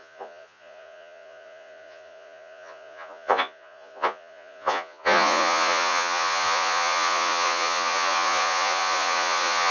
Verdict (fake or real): fake